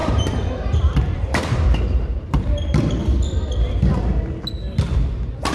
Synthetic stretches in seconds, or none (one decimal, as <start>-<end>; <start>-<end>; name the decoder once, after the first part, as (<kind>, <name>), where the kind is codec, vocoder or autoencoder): 0.0-2.9 (vocoder, BigVGAN v2)